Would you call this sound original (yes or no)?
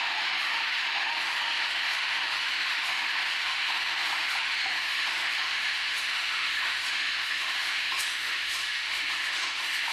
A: no